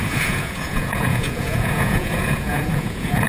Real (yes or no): no